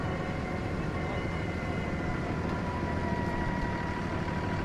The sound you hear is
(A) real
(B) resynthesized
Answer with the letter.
B